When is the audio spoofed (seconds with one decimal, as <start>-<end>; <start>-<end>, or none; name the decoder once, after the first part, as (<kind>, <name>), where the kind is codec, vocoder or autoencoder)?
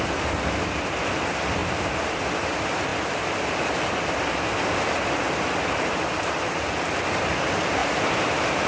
1.6-2.2 (vocoder, BigVGAN v2); 2.9-4.0; 7.8-8.7